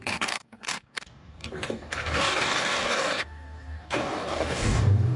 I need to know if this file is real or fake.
fake